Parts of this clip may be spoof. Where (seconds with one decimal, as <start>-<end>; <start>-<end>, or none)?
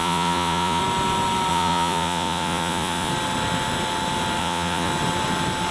0.0-0.8; 1.5-3.1; 4.4-4.9